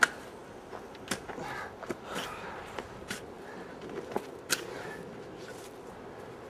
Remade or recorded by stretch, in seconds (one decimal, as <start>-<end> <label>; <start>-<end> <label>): 0.0-6.5 recorded